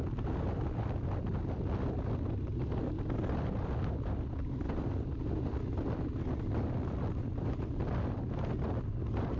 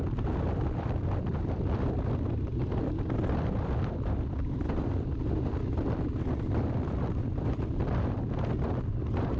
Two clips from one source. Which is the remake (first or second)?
second